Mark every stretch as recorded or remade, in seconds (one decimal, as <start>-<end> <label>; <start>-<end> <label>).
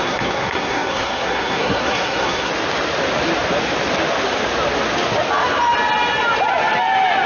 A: 0.0-2.5 remade; 2.5-7.3 recorded